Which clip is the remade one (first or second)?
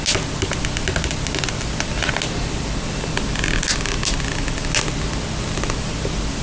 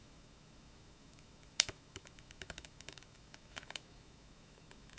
second